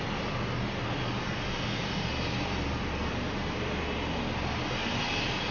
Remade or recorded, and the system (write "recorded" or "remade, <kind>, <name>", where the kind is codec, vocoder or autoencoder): recorded